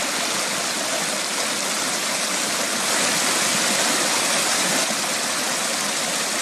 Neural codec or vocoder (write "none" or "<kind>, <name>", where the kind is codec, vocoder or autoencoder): none